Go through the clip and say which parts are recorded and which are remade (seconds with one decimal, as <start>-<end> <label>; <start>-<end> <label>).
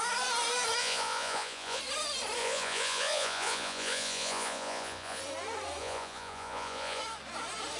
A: 0.0-0.8 recorded; 0.8-1.8 remade; 1.8-2.4 recorded; 2.4-5.2 remade; 5.2-5.8 recorded; 5.8-7.0 remade; 7.0-7.8 recorded